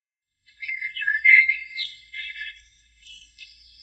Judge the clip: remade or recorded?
remade